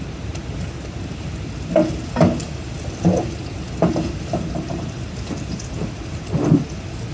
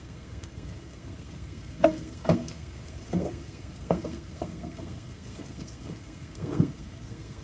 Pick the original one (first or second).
first